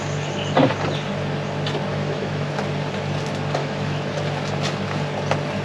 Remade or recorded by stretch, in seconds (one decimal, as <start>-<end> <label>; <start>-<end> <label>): 0.0-1.9 recorded; 1.9-2.6 remade; 2.6-3.6 recorded; 3.6-4.2 remade; 4.2-5.6 recorded